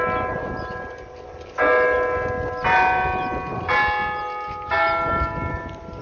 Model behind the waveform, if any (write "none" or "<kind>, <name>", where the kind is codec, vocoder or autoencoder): none